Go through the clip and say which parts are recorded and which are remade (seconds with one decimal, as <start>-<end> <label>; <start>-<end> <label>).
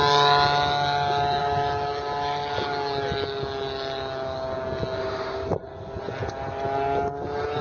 0.0-7.6 recorded